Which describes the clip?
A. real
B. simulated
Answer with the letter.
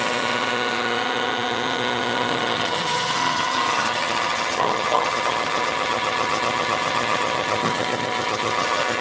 B